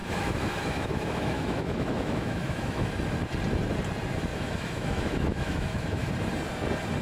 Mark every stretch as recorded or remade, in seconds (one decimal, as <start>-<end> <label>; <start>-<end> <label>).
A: 0.0-2.9 remade; 2.9-4.3 recorded; 4.3-6.1 remade; 6.1-7.0 recorded

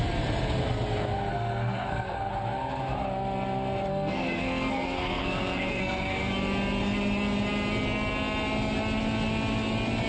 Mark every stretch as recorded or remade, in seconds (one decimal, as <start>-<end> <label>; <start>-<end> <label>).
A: 0.0-1.3 recorded; 1.3-2.3 remade; 2.3-3.9 recorded; 3.9-6.3 remade; 6.3-10.1 recorded

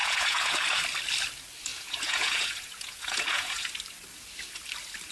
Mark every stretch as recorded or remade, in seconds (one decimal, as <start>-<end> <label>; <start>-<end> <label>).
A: 0.0-0.8 remade; 0.8-1.7 recorded; 1.7-3.7 remade; 3.7-5.1 recorded

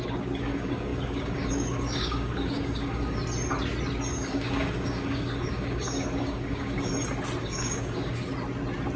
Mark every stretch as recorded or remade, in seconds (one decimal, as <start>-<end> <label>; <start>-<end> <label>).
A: 0.0-3.2 remade; 3.2-4.1 recorded; 4.1-6.9 remade; 6.9-7.4 recorded; 7.4-8.3 remade; 8.3-9.0 recorded